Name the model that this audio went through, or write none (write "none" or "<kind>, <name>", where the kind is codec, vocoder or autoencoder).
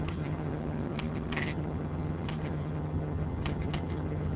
vocoder, HiFi-GAN